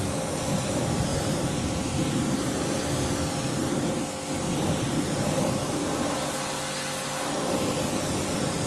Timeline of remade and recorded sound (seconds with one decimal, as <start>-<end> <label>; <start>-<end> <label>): 0.0-1.1 recorded; 1.1-2.6 remade; 2.6-4.9 recorded; 4.9-5.9 remade; 5.9-8.7 recorded